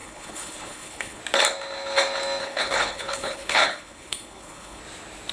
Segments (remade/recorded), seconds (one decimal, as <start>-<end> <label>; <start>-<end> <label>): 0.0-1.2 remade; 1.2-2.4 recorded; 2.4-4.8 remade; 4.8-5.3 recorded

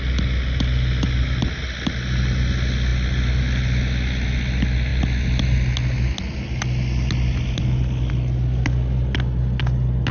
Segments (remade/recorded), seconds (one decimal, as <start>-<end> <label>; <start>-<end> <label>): 0.0-10.1 recorded

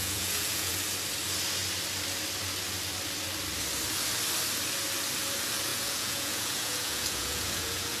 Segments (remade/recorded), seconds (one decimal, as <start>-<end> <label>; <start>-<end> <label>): 0.0-0.7 remade; 0.7-5.7 recorded; 5.7-8.0 remade

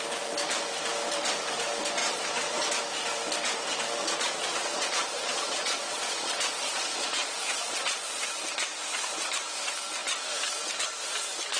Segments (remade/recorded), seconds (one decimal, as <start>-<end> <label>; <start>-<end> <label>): 0.0-2.0 recorded; 2.0-2.7 remade; 2.7-4.0 recorded; 4.0-8.3 remade; 8.3-11.6 recorded

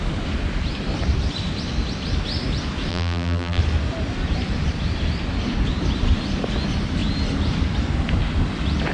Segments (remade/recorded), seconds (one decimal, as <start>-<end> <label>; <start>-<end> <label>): 0.0-2.9 recorded; 2.9-3.6 remade; 3.6-8.9 recorded

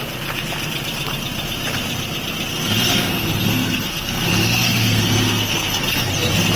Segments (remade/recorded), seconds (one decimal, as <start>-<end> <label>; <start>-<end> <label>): 0.0-2.5 recorded; 2.5-6.1 remade; 6.1-6.6 recorded

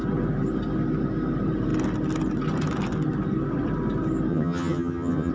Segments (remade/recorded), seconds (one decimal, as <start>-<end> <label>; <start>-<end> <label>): 0.0-4.3 recorded; 4.3-5.3 remade